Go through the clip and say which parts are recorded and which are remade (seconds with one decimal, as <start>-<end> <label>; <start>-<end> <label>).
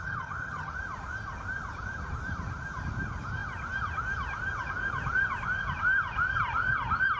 0.0-0.7 remade; 0.7-7.2 recorded